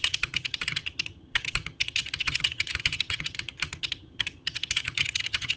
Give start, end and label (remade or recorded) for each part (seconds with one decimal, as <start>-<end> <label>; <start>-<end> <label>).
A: 0.0-5.6 remade